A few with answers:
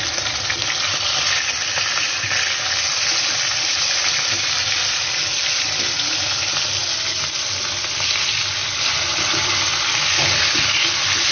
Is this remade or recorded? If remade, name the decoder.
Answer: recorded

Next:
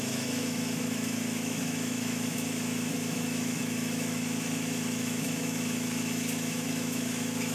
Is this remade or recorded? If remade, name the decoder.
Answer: remade, autoencoder, DAC-VAE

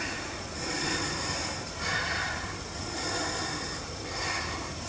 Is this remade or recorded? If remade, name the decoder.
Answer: recorded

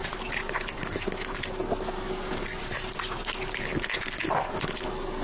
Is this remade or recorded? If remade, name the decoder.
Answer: recorded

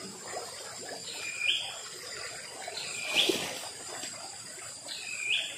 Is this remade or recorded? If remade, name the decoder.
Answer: recorded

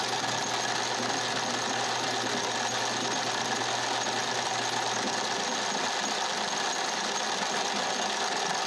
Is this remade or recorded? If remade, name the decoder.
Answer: recorded